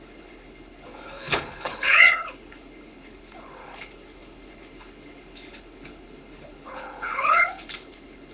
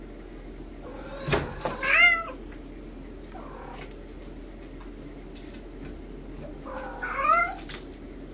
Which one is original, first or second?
second